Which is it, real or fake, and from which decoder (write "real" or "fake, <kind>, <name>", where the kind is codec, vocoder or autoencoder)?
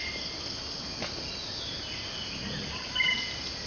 real